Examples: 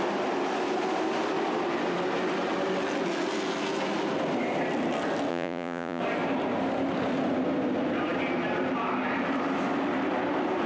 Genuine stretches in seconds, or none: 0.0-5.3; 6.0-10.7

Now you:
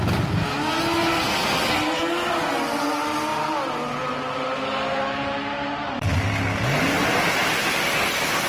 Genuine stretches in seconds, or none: 0.0-8.5

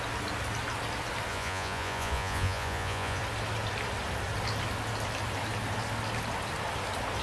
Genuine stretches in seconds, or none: 0.0-1.3; 3.2-7.2

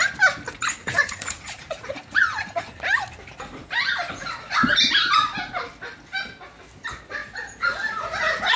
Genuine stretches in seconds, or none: 0.0-0.8; 2.8-8.6